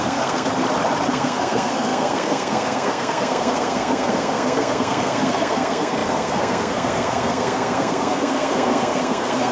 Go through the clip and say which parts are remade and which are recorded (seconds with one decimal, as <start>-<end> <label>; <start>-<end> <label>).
0.0-0.5 remade; 0.5-1.1 recorded; 1.1-9.5 remade